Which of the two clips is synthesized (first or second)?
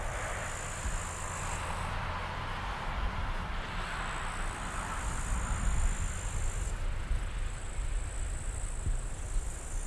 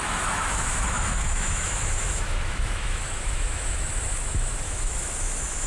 second